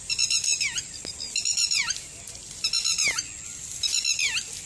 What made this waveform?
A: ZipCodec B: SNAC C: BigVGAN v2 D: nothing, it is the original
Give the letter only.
D